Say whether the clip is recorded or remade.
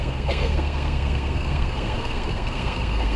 remade